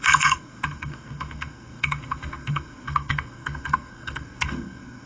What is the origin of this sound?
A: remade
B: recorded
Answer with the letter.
A